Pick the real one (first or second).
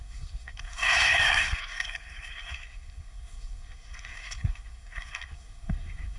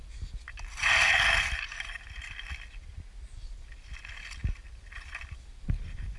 second